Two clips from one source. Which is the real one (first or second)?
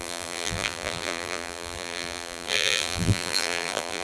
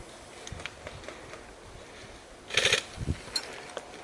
second